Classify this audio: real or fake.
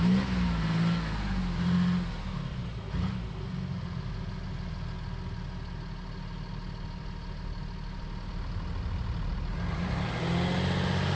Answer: real